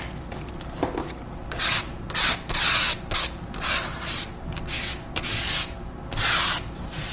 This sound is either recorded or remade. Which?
recorded